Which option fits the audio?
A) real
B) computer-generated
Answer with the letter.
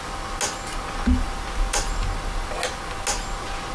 A